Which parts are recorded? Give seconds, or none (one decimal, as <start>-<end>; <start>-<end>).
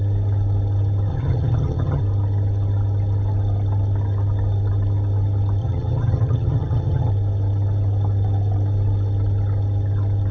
0.0-1.1; 2.0-5.6; 7.1-10.3